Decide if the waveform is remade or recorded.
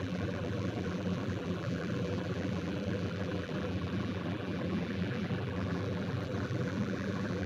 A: remade